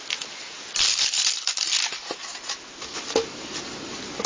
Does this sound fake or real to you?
real